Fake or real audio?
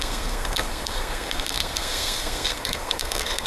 fake